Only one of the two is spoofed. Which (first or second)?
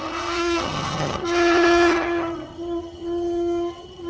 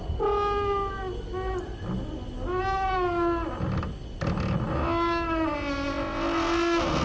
first